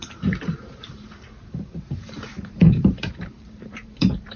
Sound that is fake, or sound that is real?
fake